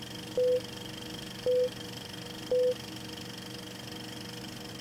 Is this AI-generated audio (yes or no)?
no